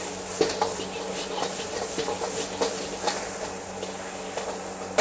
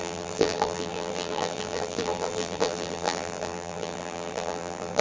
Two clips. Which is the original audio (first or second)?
first